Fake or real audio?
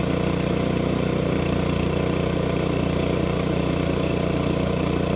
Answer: fake